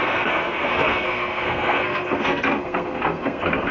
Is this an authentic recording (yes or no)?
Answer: no